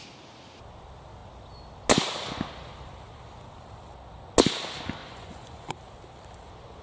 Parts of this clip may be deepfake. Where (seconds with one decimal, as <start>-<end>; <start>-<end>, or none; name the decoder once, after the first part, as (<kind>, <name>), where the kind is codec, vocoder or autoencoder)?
5.0-5.7 (vocoder, Vocos)